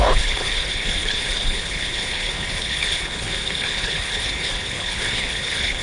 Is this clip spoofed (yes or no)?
yes